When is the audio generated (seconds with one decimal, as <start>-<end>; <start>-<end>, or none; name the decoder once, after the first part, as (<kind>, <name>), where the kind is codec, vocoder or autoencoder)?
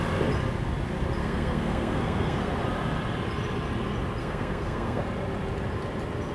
1.2-2.5 (codec, SNAC); 4.2-5.0